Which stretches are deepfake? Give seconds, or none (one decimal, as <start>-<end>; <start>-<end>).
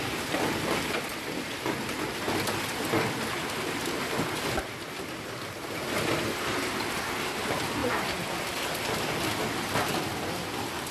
none